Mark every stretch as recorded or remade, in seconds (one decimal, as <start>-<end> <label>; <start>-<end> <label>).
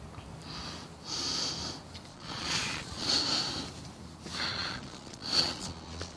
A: 0.0-2.1 recorded; 2.1-3.1 remade; 3.1-4.5 recorded; 4.5-6.2 remade